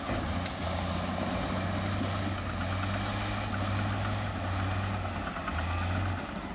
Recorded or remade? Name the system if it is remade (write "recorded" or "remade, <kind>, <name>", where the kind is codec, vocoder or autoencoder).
recorded